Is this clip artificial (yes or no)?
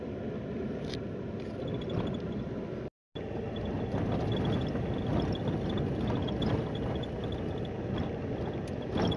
no